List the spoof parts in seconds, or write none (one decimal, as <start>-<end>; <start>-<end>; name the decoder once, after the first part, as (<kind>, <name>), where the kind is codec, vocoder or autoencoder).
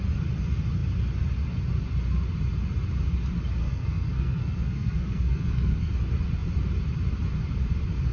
3.6-5.9 (codec, SNAC)